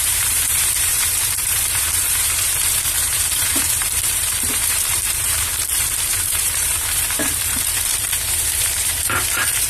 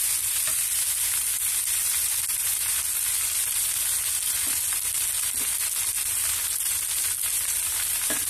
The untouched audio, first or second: second